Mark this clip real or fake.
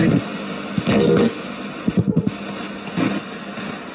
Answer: real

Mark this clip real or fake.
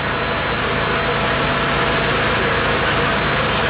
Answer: real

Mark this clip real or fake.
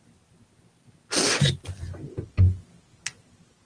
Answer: real